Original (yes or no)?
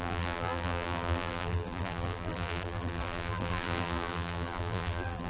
no